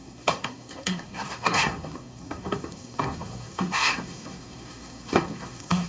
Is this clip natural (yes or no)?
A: no